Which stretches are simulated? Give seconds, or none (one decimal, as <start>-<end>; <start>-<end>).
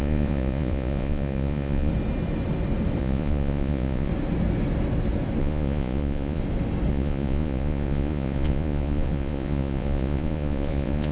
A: 0.0-1.9; 3.0-4.1; 5.4-6.4; 6.9-11.1